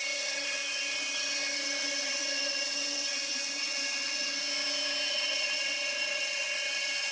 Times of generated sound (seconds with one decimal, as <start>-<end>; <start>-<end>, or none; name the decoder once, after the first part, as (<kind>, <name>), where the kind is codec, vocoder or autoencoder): 0.0-4.4 (vocoder, HiFi-GAN); 5.1-7.1